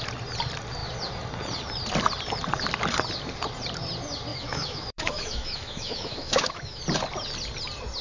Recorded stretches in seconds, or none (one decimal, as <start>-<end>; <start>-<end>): 0.0-4.3; 6.8-8.0